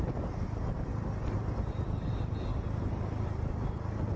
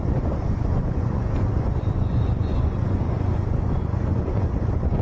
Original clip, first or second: first